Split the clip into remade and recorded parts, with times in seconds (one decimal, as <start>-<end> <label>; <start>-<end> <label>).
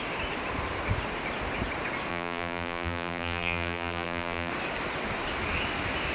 0.0-2.1 recorded; 2.1-4.5 remade; 4.5-6.1 recorded